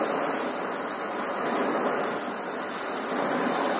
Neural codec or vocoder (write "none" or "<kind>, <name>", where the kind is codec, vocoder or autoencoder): none